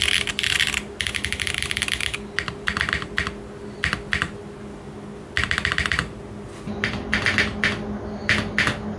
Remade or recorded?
recorded